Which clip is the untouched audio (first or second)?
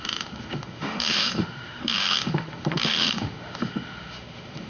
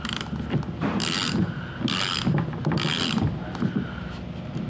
second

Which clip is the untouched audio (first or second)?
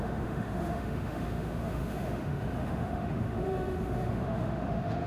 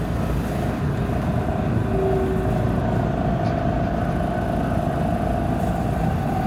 second